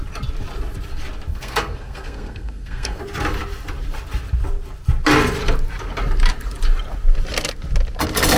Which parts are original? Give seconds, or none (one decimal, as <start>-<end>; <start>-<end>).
0.0-1.3; 3.0-8.4